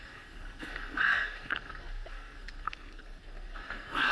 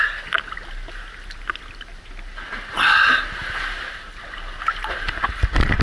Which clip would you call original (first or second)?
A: second